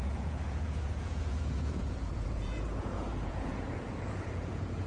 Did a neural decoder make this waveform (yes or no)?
yes